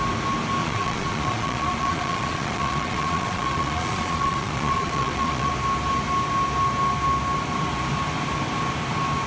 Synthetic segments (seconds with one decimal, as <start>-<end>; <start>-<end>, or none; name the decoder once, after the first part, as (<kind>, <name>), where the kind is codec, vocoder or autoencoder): 0.6-5.5 (vocoder, Vocos)